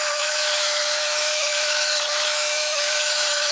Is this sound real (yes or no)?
no